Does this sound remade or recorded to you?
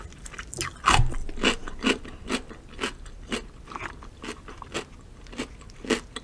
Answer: recorded